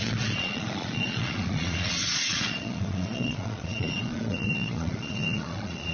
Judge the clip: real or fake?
fake